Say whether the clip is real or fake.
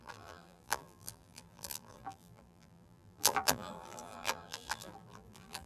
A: fake